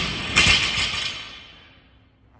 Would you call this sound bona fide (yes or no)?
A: yes